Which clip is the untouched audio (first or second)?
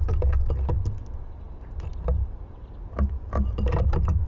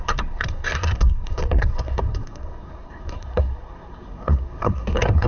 first